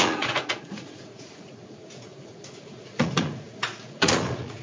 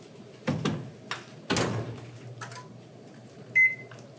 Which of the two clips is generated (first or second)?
first